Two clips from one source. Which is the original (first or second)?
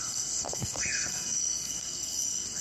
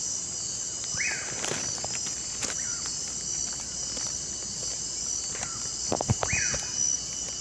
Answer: second